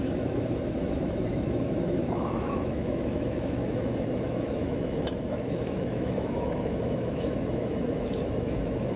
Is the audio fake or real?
fake